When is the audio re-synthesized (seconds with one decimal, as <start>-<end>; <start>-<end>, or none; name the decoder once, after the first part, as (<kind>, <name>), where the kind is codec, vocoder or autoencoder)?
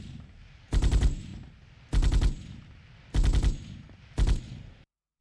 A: 0.0-1.3 (vocoder, BigVGAN v2); 4.4-5.2